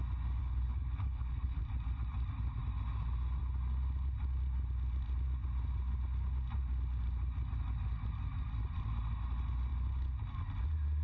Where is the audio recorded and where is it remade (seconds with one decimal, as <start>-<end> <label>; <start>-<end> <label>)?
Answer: 0.0-0.4 recorded; 0.4-1.6 remade; 1.6-11.0 recorded